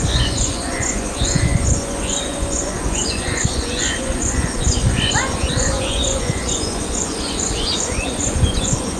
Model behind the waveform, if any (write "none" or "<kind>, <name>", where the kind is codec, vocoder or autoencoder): vocoder, Vocos